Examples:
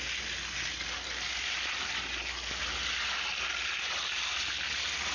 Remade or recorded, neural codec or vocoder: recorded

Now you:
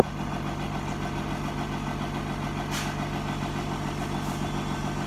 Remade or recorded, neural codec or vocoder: recorded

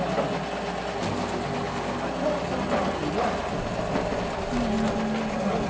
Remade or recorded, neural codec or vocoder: recorded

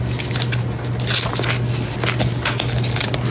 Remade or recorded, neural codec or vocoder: recorded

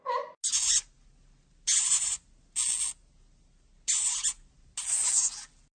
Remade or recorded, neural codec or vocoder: recorded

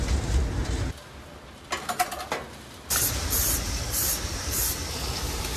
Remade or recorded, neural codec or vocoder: recorded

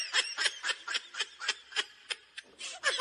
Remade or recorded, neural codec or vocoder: remade, vocoder, BigVGAN v2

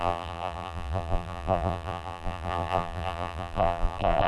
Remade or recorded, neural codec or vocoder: remade, vocoder, BigVGAN v2